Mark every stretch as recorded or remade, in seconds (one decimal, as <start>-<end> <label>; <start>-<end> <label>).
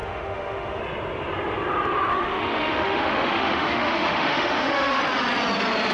0.0-0.8 remade; 0.8-2.1 recorded; 2.1-5.0 remade; 5.0-5.9 recorded